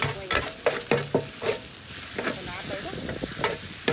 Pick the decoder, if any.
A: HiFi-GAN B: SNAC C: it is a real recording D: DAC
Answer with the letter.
C